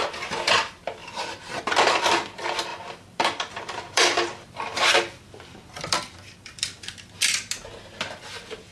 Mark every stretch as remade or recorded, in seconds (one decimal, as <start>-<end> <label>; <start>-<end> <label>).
0.0-1.0 recorded; 1.0-1.6 remade; 1.6-2.7 recorded; 2.7-7.2 remade; 7.2-8.7 recorded